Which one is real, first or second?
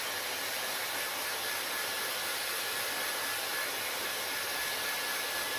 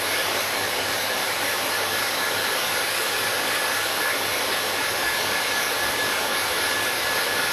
first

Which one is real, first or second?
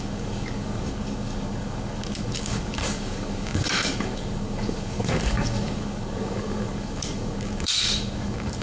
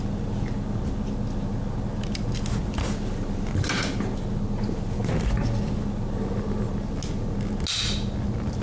second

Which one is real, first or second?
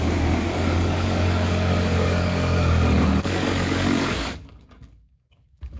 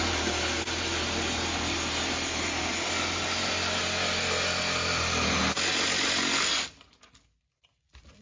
second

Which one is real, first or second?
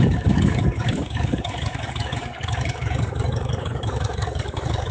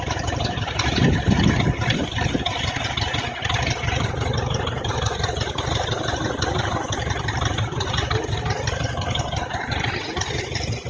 second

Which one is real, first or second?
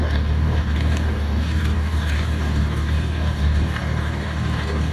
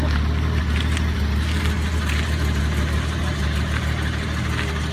second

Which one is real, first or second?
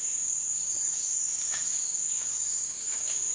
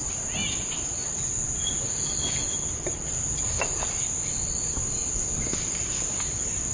second